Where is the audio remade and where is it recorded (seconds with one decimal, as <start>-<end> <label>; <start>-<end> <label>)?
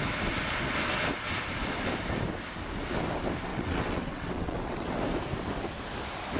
0.0-3.5 recorded; 3.5-5.0 remade; 5.0-6.4 recorded